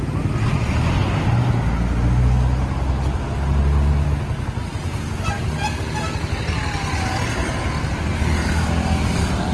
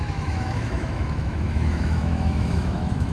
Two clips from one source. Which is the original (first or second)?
first